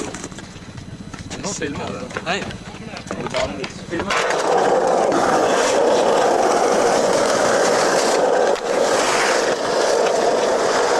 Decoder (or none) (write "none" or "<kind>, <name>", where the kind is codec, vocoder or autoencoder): vocoder, Vocos